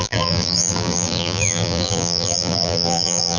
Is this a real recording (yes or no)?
no